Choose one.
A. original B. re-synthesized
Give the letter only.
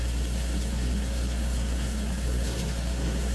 B